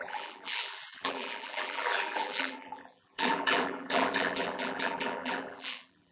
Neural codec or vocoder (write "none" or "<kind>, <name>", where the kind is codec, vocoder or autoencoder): vocoder, BigVGAN v2